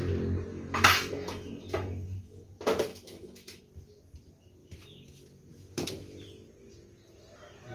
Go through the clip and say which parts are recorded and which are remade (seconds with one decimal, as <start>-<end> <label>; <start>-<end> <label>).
0.0-0.5 recorded; 0.5-2.5 remade; 2.5-2.9 recorded; 2.9-3.6 remade; 3.6-7.7 recorded